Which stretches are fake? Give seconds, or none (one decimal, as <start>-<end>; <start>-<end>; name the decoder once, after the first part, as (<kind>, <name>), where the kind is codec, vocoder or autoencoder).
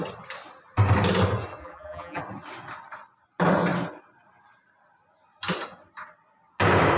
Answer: 1.6-2.2 (vocoder, BigVGAN v2)